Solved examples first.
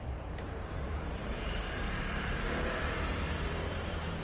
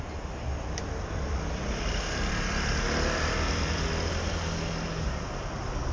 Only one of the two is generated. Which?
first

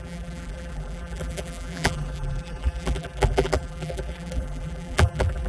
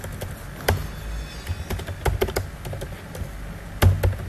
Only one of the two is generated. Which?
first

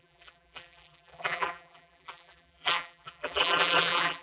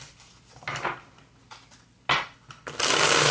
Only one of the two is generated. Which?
first